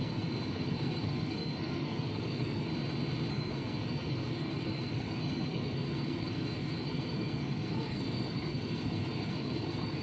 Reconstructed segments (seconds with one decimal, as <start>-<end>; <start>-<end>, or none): 0.0-2.7; 3.3-10.0